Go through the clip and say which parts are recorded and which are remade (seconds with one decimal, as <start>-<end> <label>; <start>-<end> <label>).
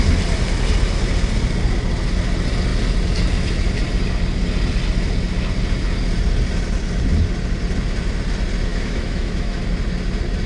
0.0-8.7 recorded; 8.7-9.6 remade; 9.6-10.5 recorded